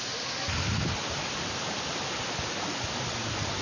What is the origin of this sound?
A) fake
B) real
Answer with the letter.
B